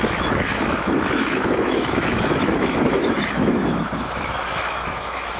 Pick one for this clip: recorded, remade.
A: remade